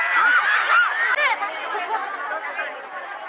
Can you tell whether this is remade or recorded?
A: recorded